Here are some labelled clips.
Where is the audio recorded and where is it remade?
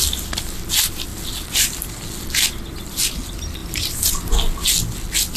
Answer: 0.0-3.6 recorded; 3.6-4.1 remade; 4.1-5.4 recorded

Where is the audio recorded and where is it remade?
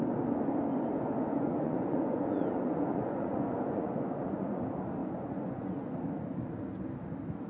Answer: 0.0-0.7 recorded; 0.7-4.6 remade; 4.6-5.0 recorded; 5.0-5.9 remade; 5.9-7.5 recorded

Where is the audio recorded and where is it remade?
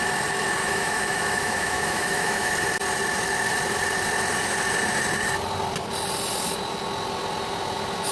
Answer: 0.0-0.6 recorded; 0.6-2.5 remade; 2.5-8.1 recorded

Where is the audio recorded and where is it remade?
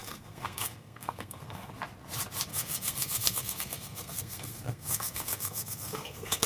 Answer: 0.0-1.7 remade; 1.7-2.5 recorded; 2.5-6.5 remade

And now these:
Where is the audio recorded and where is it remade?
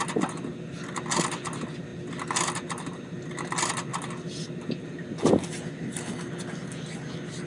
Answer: 0.0-7.5 recorded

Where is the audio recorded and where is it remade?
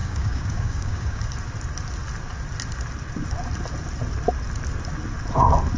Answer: 0.0-1.2 remade; 1.2-5.8 recorded